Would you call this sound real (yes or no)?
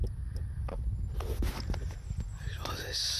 yes